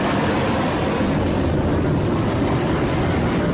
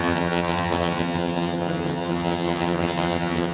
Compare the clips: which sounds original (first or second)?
first